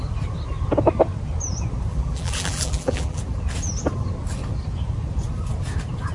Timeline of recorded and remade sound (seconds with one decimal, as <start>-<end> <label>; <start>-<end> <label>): 0.0-1.9 recorded; 1.9-3.2 remade; 3.2-6.1 recorded